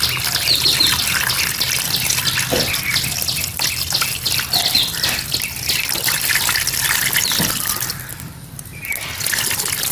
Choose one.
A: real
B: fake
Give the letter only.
A